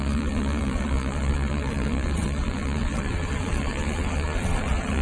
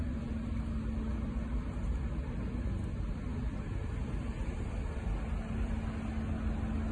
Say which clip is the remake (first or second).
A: first